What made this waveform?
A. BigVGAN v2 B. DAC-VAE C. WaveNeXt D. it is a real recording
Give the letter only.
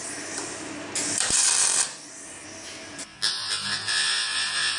D